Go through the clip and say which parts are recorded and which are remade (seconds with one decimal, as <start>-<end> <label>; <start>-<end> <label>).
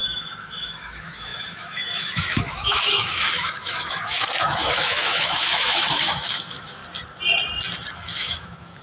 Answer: 0.0-6.8 remade; 6.8-7.9 recorded; 7.9-8.8 remade